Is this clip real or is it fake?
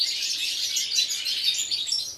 real